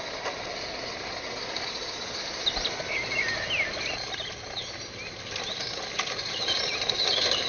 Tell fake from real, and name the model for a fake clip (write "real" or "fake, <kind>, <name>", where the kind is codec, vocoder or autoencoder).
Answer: real